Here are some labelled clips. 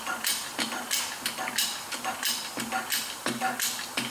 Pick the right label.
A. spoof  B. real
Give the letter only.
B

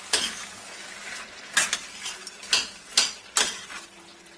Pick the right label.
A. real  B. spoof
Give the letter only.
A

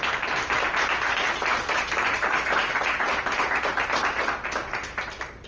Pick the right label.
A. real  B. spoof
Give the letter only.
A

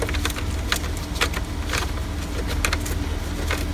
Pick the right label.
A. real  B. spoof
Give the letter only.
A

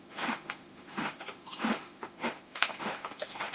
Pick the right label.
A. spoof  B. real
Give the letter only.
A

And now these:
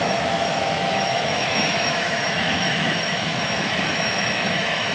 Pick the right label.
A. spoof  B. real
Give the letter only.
A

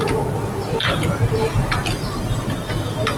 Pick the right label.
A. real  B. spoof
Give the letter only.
A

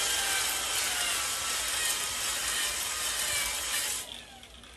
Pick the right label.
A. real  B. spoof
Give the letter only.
A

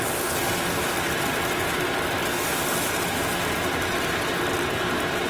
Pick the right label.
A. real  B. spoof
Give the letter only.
A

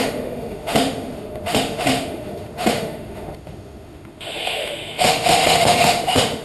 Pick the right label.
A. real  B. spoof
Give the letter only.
B